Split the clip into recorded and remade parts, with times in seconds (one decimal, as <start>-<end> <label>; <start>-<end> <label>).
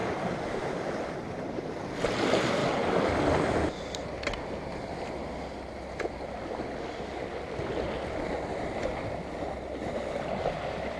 0.0-11.0 recorded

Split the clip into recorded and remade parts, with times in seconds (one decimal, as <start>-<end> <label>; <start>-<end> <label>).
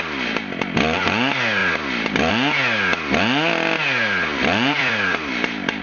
0.0-1.6 recorded; 1.6-2.3 remade; 2.3-4.3 recorded; 4.3-5.3 remade; 5.3-5.8 recorded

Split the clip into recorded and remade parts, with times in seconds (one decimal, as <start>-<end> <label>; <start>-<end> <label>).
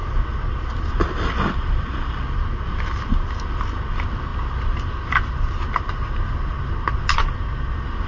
0.0-8.1 recorded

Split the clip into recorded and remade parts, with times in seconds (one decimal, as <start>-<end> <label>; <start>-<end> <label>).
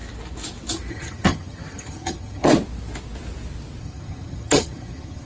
0.0-0.9 recorded; 0.9-2.5 remade; 2.5-3.8 recorded; 3.8-5.3 remade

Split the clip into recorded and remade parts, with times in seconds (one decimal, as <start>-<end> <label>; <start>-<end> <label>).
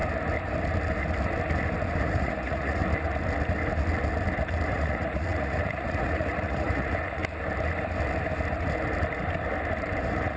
0.0-2.0 recorded; 2.0-2.8 remade; 2.8-4.7 recorded; 4.7-7.2 remade; 7.2-10.0 recorded; 10.0-10.4 remade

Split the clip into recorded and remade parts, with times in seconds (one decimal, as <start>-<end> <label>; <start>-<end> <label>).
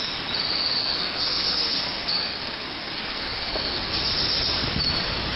0.0-0.8 recorded; 0.8-4.0 remade; 4.0-5.4 recorded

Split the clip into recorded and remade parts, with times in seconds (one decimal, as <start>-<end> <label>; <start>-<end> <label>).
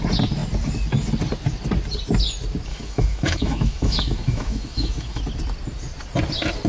0.0-2.7 recorded; 2.7-5.2 remade; 5.2-6.7 recorded